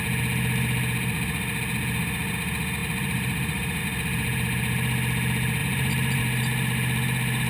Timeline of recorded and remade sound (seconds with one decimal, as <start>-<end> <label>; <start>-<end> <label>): 0.0-2.8 recorded; 2.8-3.8 remade; 3.8-5.6 recorded; 5.6-6.2 remade; 6.2-7.5 recorded